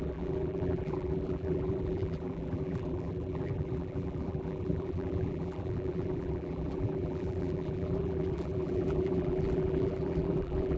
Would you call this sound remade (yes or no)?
yes